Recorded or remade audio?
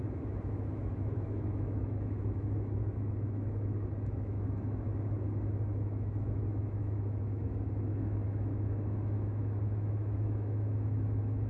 remade